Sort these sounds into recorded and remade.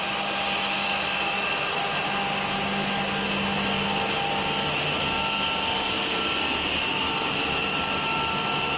recorded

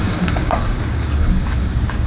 remade